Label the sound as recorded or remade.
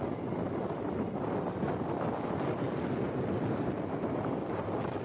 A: recorded